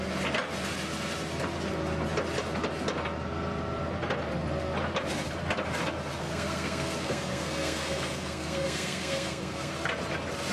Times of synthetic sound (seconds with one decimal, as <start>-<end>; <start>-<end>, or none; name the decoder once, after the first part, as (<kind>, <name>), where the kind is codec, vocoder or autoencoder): 6.2-9.7 (codec, SNAC)